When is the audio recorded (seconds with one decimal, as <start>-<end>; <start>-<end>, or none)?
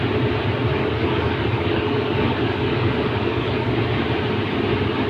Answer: 0.0-0.7; 3.8-5.1